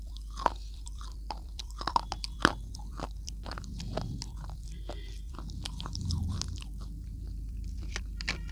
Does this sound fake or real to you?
fake